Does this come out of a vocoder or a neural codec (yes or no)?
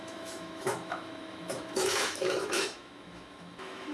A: yes